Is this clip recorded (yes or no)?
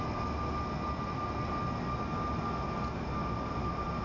yes